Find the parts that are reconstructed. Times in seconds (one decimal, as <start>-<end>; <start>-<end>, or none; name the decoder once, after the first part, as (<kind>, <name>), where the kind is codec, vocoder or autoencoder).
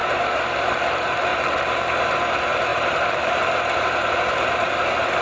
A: 0.0-0.7 (vocoder, BigVGAN v2); 1.3-1.8; 2.7-4.7